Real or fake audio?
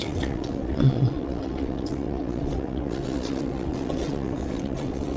fake